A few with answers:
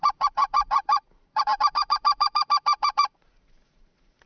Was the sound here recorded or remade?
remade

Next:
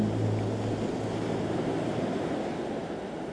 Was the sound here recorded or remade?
recorded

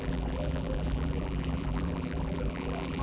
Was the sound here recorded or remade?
remade